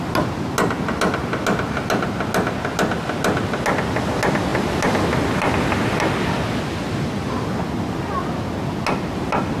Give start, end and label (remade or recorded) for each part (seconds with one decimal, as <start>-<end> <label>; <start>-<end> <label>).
0.0-9.6 recorded